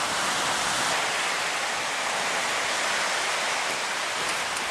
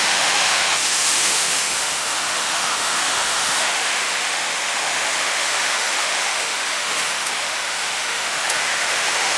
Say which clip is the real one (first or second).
first